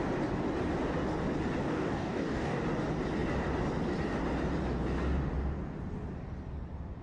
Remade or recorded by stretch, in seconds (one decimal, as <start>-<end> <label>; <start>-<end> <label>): 0.0-1.6 recorded; 1.6-2.6 remade; 2.6-7.0 recorded